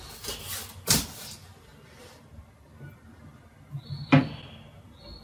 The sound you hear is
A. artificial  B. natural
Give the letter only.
B